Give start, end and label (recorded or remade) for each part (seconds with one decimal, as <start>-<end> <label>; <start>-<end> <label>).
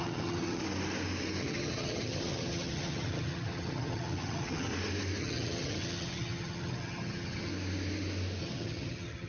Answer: 0.0-0.6 remade; 0.6-1.4 recorded; 1.4-4.7 remade; 4.7-5.2 recorded; 5.2-7.5 remade; 7.5-8.4 recorded; 8.4-9.3 remade